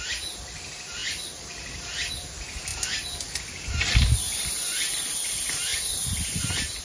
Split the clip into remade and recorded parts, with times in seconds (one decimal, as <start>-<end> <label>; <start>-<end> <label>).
0.0-6.8 recorded

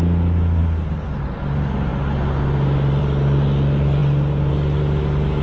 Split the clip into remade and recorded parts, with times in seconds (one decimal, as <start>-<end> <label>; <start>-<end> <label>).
0.0-5.4 recorded